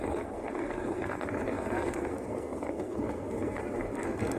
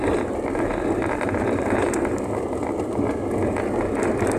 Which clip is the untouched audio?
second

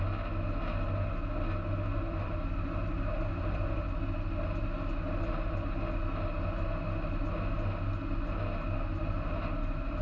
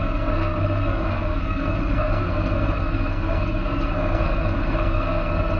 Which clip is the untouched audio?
first